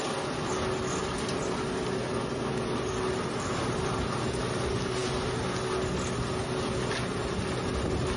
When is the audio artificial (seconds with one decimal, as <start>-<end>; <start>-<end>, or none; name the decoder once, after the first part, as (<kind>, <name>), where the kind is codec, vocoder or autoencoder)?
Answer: none